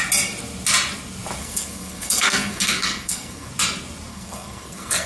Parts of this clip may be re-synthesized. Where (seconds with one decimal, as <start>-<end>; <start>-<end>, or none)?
1.4-3.5; 4.1-5.1